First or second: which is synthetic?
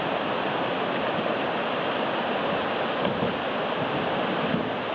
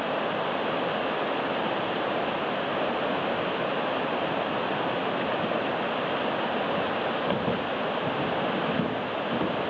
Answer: first